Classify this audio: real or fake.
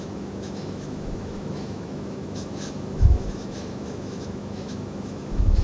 fake